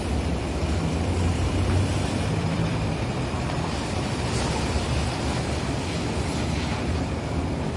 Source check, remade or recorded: remade